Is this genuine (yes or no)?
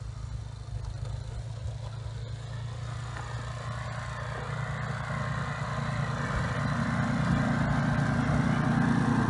yes